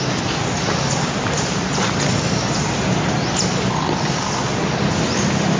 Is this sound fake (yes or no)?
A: no